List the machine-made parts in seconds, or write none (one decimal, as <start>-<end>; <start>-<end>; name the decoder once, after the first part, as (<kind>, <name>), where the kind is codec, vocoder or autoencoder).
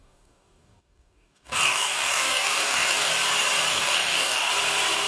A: 0.0-3.1 (codec, DAC); 3.7-4.5